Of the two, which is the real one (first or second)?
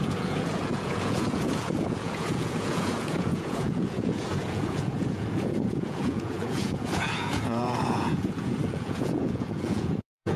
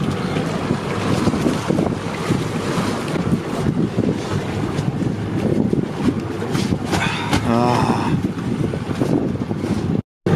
second